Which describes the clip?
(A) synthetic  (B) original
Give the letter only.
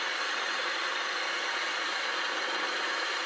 A